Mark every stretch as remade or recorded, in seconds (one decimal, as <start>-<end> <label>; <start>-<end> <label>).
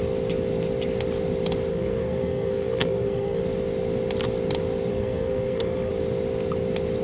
0.0-1.7 recorded; 1.7-3.4 remade; 3.4-4.9 recorded; 4.9-5.9 remade; 5.9-7.0 recorded